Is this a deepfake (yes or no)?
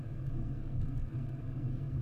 yes